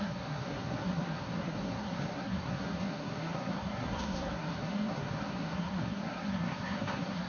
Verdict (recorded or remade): remade